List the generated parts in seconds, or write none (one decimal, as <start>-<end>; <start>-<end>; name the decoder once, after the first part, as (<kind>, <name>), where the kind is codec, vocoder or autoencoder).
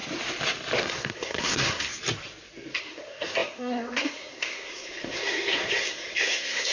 0.8-1.9 (codec, SNAC); 2.8-6.7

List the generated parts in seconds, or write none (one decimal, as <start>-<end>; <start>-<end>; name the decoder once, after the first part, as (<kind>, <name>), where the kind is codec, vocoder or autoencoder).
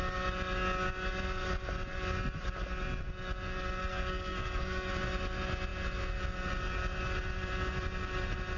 3.8-4.9 (codec, SNAC)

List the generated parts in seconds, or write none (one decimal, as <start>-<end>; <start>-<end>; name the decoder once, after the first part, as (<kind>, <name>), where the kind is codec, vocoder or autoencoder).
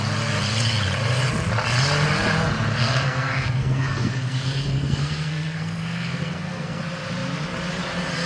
2.8-6.8 (codec, SNAC)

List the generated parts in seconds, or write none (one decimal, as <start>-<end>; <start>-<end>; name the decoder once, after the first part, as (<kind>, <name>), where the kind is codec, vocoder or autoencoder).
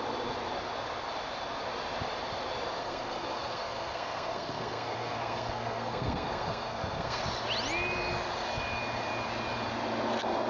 2.8-7.2 (codec, SNAC)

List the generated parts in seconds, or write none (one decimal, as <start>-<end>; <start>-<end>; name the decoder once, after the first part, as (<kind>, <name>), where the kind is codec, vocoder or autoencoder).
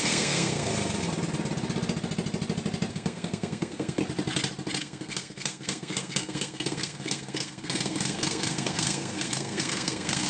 0.0-0.7 (codec, SNAC); 2.9-4.0; 4.8-10.3